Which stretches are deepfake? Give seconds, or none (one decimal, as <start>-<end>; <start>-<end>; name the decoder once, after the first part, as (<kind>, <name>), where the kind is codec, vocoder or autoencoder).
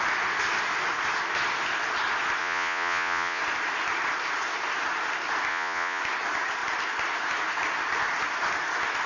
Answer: 2.4-3.4 (vocoder, Vocos); 5.5-6.0